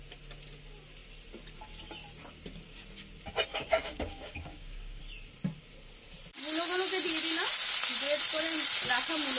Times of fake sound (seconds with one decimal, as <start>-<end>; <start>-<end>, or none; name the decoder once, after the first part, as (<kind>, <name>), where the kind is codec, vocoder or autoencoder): 3.5-5.0 (codec, DAC)